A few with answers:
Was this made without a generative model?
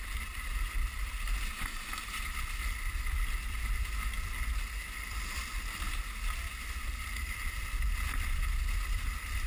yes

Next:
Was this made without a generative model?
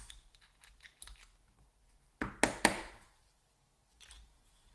yes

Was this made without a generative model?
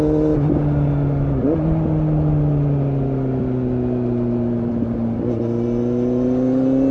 yes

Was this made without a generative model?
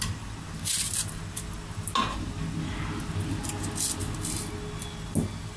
yes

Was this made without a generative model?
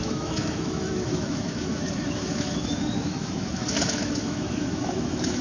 no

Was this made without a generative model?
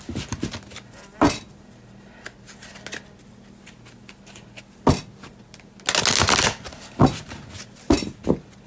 yes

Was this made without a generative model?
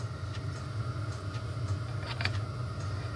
yes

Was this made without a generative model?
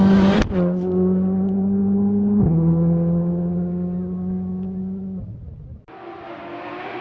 yes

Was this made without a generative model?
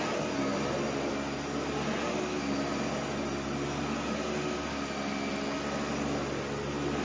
yes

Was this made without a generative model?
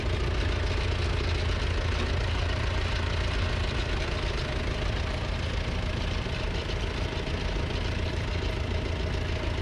yes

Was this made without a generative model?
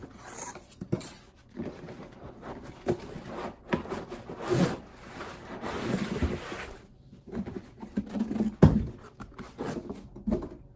yes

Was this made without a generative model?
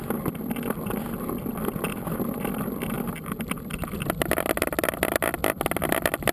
yes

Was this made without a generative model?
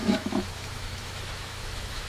no